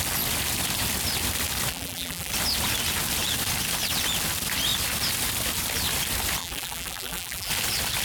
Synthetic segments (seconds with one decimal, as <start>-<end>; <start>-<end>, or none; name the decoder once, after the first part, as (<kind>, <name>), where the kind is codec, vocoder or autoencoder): 1.7-2.3 (vocoder, BigVGAN v2); 6.4-7.5

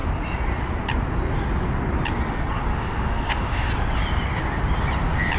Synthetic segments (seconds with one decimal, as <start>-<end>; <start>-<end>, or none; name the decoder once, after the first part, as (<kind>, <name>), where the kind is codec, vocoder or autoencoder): 2.7-3.7 (autoencoder, DAC-VAE)

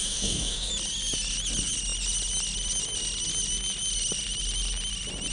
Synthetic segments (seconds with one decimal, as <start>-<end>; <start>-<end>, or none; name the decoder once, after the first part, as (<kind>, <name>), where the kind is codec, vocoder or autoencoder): 0.0-0.7 (codec, DAC)

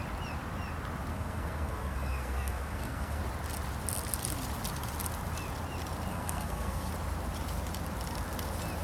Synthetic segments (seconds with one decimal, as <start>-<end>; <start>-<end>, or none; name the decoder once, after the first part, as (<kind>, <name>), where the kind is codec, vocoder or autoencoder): 1.1-3.2 (codec, SNAC); 6.1-6.9

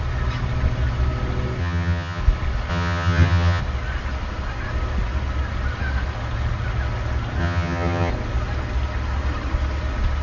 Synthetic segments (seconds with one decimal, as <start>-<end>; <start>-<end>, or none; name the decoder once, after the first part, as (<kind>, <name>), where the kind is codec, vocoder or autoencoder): 1.6-2.2 (vocoder, HiFi-GAN); 2.7-3.6; 7.4-8.1

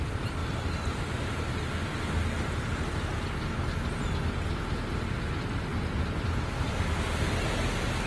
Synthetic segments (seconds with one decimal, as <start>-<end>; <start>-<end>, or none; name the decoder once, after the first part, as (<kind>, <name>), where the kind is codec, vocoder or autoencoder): none

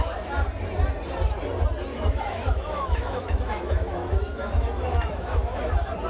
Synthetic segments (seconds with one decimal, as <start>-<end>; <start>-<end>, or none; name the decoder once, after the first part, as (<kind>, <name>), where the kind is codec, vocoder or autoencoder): 1.9-5.6 (autoencoder, DAC-VAE)